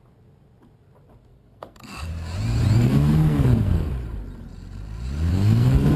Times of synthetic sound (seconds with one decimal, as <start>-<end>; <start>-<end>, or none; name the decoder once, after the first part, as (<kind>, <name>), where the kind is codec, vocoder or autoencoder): 1.3-2.1 (codec, SNAC); 2.8-3.9; 5.3-6.0